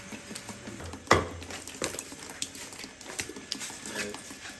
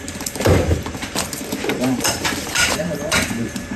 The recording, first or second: first